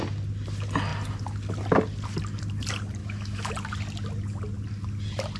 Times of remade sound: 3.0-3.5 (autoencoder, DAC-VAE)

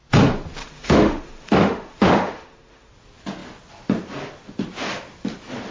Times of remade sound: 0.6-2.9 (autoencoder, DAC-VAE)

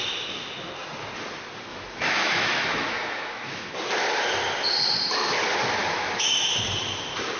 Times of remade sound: 1.7-3.7 (autoencoder, DAC-VAE); 5.8-6.5

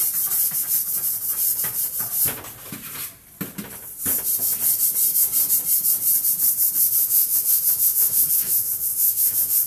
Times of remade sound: 7.0-9.7 (autoencoder, DAC-VAE)

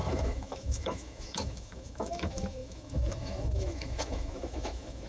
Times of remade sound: 0.0-5.1 (autoencoder, DAC-VAE)

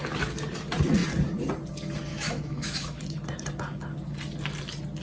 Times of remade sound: 2.1-3.0 (autoencoder, DAC-VAE)

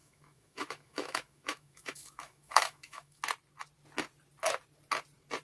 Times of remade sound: 0.0-3.2 (autoencoder, DAC-VAE)